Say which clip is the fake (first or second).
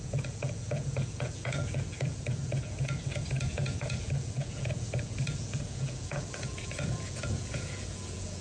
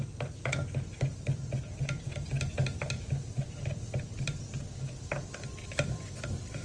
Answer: first